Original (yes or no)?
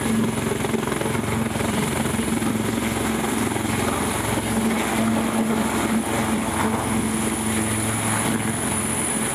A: yes